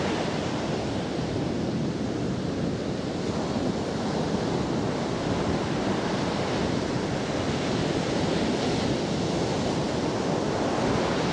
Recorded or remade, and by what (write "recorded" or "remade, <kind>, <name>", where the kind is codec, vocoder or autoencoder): recorded